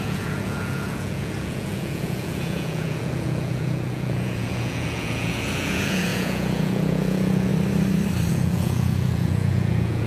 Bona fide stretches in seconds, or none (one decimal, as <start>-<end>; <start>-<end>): 7.5-8.3